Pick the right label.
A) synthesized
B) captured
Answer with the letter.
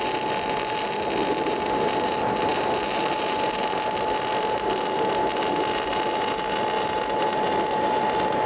B